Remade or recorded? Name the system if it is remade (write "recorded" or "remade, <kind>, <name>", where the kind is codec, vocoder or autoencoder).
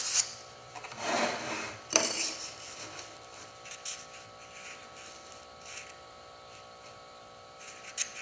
remade, vocoder, BigVGAN v2